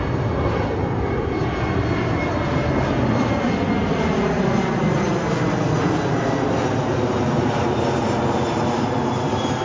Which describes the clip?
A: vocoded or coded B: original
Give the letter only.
B